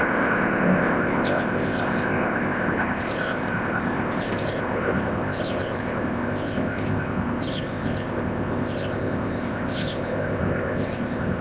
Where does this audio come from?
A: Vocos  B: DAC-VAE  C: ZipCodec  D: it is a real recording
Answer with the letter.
C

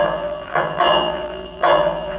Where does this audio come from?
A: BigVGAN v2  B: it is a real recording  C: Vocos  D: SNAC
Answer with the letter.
A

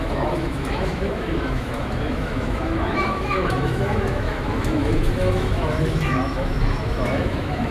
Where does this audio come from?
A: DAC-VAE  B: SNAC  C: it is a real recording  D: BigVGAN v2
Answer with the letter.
A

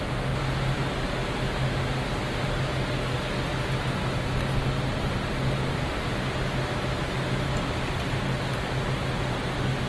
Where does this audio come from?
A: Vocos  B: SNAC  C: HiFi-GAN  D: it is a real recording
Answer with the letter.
D